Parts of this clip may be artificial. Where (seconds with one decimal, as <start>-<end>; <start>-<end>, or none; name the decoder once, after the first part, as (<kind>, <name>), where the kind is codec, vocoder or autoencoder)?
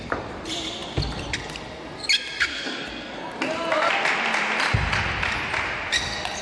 2.5-3.3 (codec, SNAC)